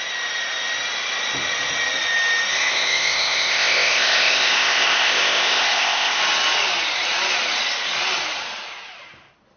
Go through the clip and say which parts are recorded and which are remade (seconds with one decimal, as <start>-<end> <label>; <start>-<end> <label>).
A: 0.0-2.5 recorded; 2.5-6.2 remade; 6.2-9.6 recorded